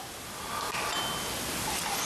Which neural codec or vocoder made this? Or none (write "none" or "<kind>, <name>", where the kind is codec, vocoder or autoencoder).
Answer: none